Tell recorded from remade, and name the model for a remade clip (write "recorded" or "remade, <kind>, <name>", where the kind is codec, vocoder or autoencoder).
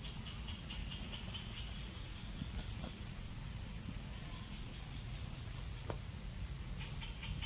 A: remade, vocoder, Vocos